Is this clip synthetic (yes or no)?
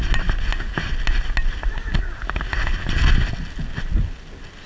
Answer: no